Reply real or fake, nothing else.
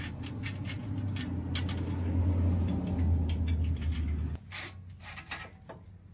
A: real